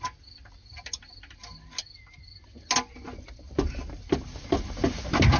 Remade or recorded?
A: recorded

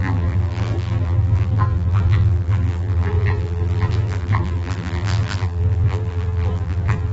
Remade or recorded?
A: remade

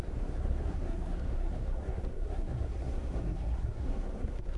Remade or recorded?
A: remade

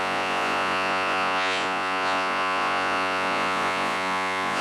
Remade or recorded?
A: remade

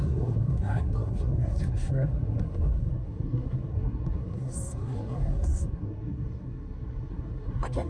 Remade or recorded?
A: remade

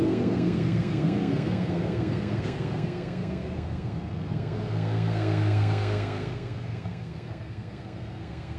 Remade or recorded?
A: remade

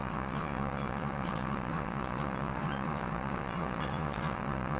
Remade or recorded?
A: remade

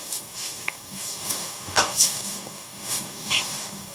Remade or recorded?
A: remade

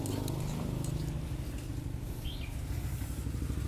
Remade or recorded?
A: recorded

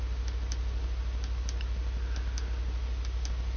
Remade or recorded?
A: recorded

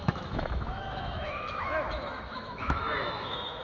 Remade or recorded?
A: remade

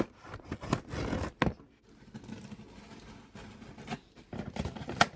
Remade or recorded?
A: recorded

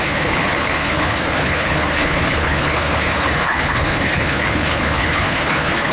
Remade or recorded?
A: remade